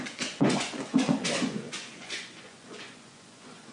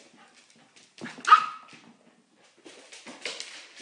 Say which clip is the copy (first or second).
first